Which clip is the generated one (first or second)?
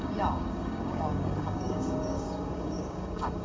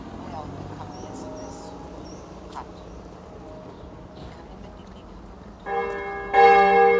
first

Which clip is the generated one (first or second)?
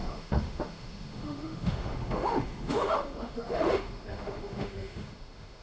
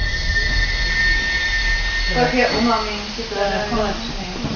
first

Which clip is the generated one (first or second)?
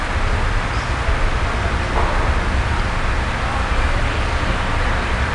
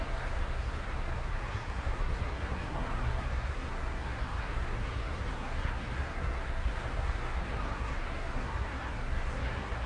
second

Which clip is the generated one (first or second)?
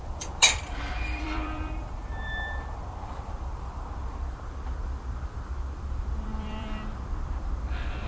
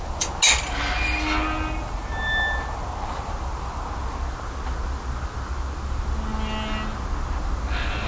first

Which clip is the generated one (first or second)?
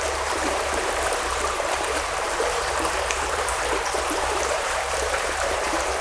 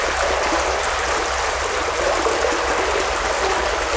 first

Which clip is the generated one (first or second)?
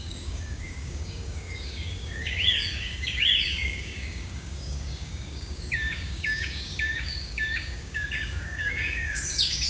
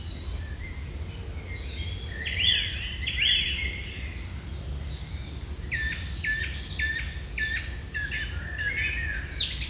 first